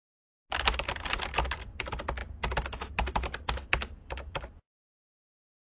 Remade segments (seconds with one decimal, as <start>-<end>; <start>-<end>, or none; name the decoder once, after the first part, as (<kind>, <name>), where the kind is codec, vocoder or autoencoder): none